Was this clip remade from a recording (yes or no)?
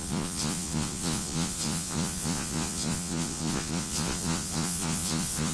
yes